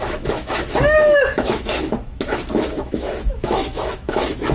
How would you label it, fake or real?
fake